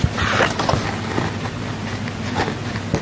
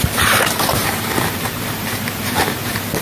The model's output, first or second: second